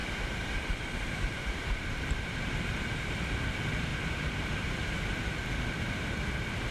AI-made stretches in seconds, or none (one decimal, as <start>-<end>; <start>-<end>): 0.0-2.5; 3.9-5.0